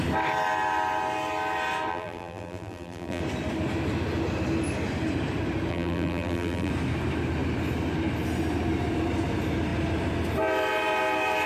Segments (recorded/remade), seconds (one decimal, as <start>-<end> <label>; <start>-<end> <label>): 0.0-1.9 recorded; 1.9-3.2 remade; 3.2-5.7 recorded; 5.7-6.7 remade; 6.7-11.5 recorded